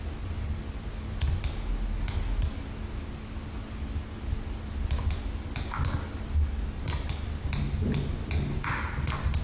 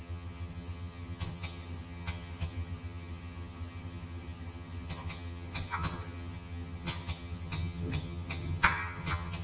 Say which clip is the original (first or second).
first